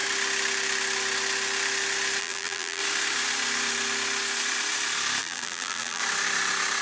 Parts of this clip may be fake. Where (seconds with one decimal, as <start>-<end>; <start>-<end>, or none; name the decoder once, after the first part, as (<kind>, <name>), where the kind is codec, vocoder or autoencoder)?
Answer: 2.2-2.8 (vocoder, BigVGAN v2); 5.2-6.0